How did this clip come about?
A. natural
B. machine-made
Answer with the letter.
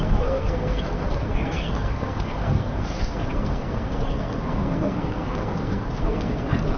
B